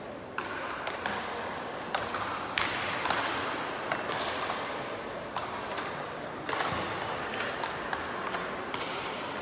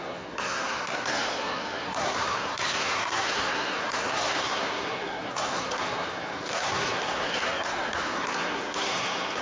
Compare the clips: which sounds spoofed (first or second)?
second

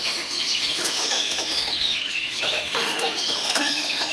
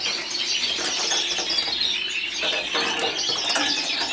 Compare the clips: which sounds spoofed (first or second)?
first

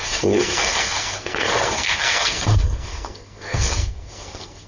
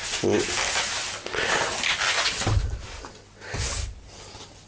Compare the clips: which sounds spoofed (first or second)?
first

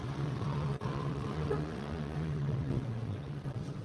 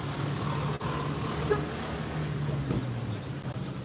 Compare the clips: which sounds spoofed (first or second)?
first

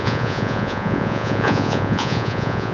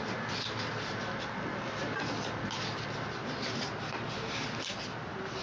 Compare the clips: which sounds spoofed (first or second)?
first